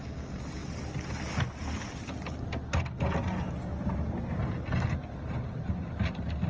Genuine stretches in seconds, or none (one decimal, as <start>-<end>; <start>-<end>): 0.0-6.5